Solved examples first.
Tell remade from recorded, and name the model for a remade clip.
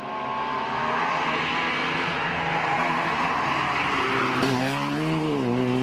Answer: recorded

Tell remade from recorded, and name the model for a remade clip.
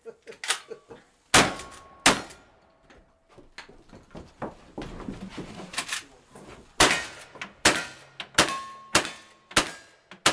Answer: recorded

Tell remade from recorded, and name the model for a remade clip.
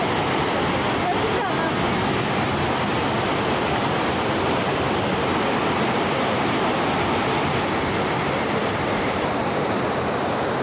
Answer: recorded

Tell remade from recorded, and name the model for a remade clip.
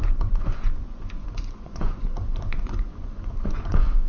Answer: remade, vocoder, Vocos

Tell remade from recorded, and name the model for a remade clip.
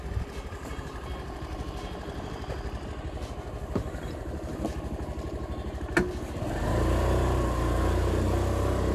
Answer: recorded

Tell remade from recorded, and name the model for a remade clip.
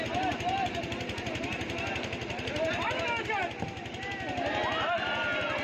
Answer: recorded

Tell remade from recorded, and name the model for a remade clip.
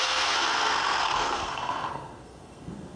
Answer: remade, codec, SNAC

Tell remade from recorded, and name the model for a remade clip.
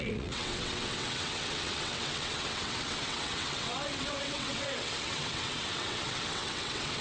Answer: remade, vocoder, WaveNeXt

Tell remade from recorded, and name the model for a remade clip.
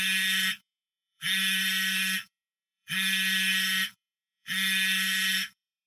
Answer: remade, codec, SNAC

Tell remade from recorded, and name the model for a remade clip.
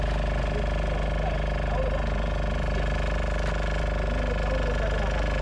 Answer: recorded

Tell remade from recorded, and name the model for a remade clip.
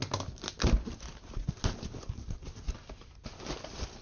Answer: recorded